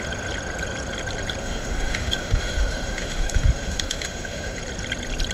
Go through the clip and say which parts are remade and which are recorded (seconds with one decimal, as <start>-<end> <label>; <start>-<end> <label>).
0.0-1.4 recorded; 1.4-4.6 remade; 4.6-5.3 recorded